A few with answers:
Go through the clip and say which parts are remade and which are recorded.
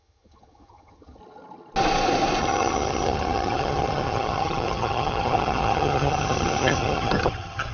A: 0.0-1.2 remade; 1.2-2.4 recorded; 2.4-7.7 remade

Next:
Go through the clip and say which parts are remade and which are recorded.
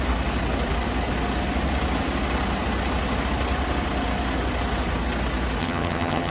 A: 0.0-5.6 recorded; 5.6-6.3 remade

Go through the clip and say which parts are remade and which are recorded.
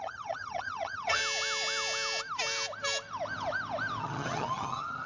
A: 0.0-1.2 remade; 1.2-4.0 recorded; 4.0-5.1 remade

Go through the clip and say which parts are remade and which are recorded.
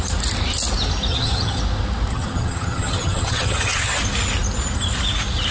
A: 0.0-1.1 recorded; 1.1-1.6 remade; 1.6-2.1 recorded; 2.1-4.0 remade; 4.0-5.5 recorded